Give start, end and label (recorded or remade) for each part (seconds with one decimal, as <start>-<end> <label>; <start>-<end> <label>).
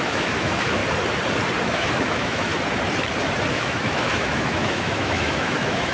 0.0-0.8 remade; 0.8-1.6 recorded; 1.6-2.5 remade; 2.5-3.5 recorded; 3.5-5.9 remade